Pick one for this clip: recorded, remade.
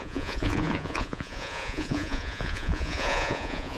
remade